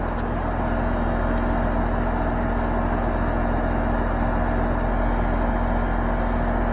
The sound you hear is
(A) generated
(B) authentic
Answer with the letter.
B